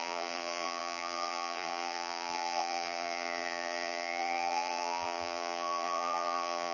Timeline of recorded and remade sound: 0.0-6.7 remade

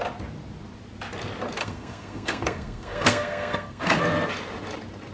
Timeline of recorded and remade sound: 0.0-1.6 recorded; 1.6-4.0 remade; 4.0-5.1 recorded

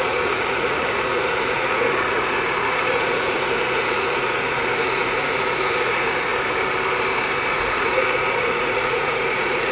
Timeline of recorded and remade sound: 0.0-6.3 remade; 6.3-7.5 recorded; 7.5-9.7 remade

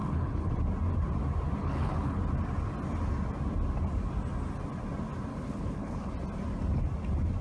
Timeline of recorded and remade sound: 0.0-0.5 remade; 0.5-1.6 recorded; 1.6-2.2 remade; 2.2-5.3 recorded; 5.3-6.1 remade; 6.1-7.4 recorded

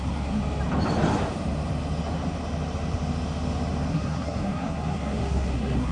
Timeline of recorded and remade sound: 0.0-0.4 remade; 0.4-3.9 recorded; 3.9-5.9 remade

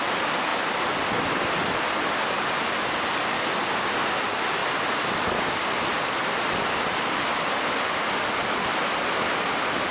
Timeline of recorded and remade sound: 0.0-9.9 recorded